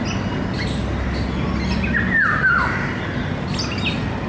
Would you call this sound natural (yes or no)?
yes